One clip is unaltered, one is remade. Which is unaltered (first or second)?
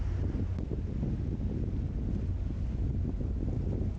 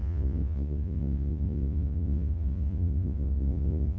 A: first